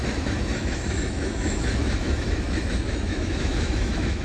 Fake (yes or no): yes